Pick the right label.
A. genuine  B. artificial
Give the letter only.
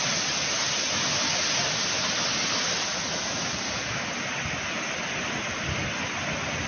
A